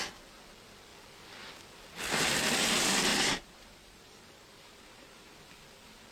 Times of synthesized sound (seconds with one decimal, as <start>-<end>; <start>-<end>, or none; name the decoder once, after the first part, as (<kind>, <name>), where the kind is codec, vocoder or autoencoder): 3.1-5.4 (vocoder, BigVGAN v2)